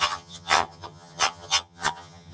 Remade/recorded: remade